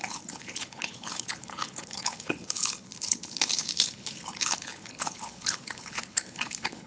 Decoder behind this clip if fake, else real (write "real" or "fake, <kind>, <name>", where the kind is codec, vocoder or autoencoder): fake, codec, HILCodec